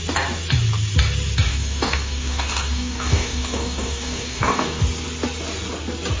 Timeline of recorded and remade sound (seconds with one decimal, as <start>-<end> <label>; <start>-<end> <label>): 0.0-1.5 recorded; 1.5-4.8 remade; 4.8-6.2 recorded